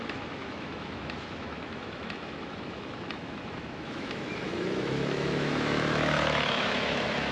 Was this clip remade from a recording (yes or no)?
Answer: yes